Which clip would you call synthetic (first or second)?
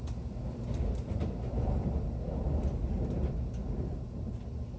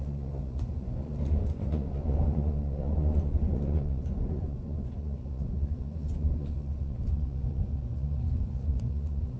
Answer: second